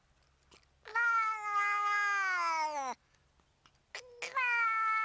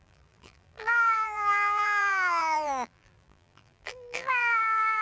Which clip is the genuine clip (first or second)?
first